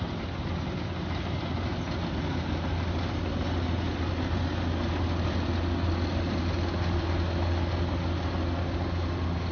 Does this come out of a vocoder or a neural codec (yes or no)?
no